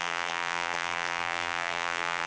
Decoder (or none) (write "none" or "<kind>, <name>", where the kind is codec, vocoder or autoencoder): vocoder, BigVGAN v2